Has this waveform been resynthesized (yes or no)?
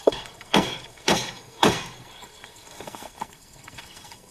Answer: yes